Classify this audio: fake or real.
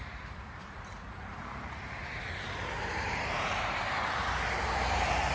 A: fake